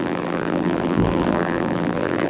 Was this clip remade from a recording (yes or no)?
yes